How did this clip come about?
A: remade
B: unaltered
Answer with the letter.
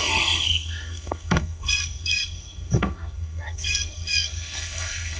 A